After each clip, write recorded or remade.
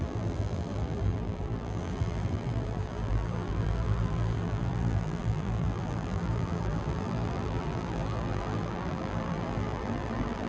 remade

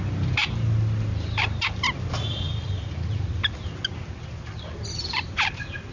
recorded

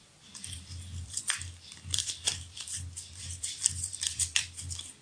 remade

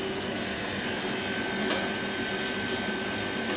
recorded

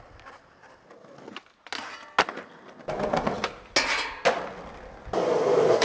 recorded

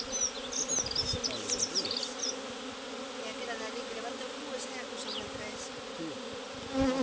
recorded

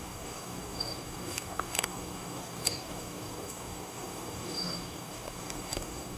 remade